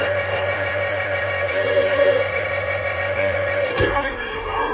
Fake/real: fake